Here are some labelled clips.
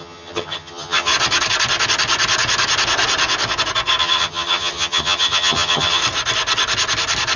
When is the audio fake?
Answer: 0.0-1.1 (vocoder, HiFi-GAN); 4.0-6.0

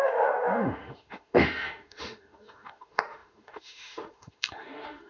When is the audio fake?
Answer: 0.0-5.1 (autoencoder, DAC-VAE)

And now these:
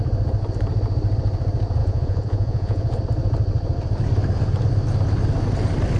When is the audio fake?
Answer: 1.8-3.0 (vocoder, Vocos)

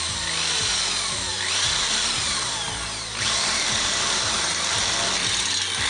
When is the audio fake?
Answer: 1.3-4.8 (vocoder, BigVGAN v2)